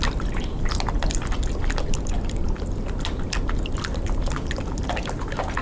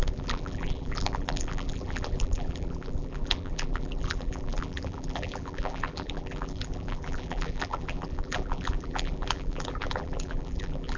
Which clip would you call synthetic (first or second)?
second